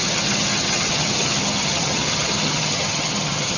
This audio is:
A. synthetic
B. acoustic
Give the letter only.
A